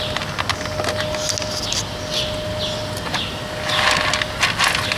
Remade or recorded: recorded